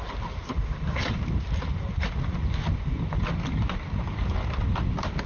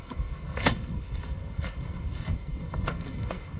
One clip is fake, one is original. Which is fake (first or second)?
second